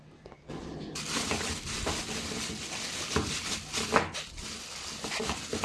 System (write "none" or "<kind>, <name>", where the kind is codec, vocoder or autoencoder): none